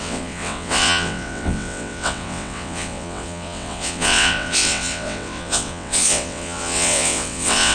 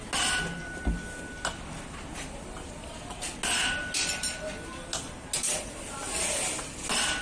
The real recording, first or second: second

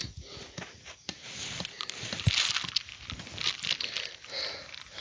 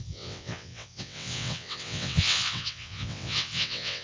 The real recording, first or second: first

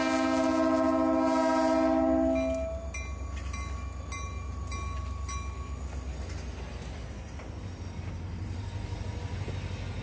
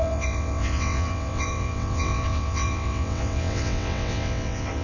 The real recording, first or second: first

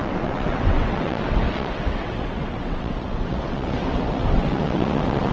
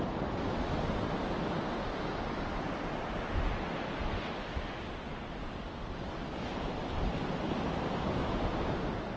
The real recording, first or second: second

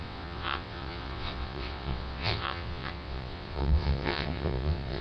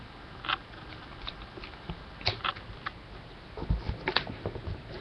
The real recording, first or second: second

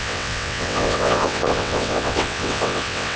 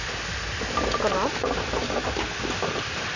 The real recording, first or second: second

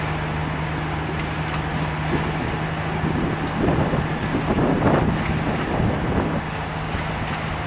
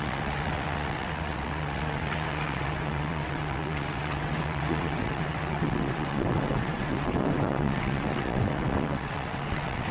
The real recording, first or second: first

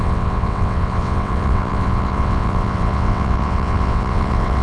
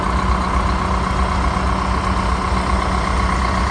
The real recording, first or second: second